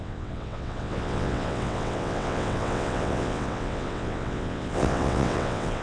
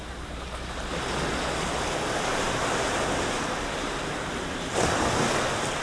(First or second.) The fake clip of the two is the first